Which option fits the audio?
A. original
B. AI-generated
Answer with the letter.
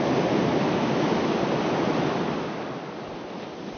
A